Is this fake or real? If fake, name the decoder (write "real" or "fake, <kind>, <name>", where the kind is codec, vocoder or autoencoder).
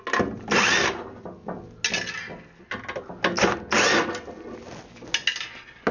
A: real